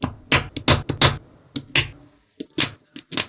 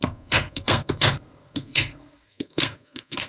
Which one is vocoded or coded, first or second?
second